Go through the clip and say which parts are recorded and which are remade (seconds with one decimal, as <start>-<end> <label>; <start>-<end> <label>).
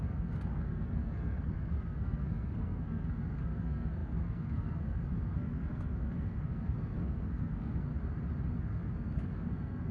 0.0-7.9 remade; 7.9-8.6 recorded; 8.6-9.9 remade